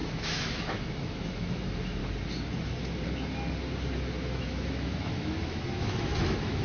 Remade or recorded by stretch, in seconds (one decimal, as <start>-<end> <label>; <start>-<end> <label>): 0.0-2.0 remade; 2.0-4.3 recorded; 4.3-6.6 remade